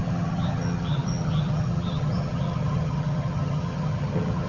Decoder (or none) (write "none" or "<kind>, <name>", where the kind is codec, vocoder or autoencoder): vocoder, HiFi-GAN